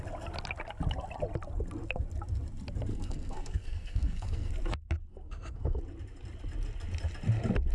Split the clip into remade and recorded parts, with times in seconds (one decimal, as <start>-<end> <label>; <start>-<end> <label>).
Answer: 0.0-2.9 recorded; 2.9-4.5 remade; 4.5-5.1 recorded; 5.1-5.8 remade; 5.8-7.7 recorded